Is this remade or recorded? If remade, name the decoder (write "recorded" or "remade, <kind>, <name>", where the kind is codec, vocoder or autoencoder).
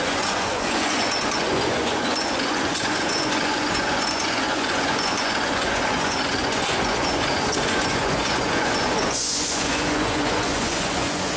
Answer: remade, vocoder, Vocos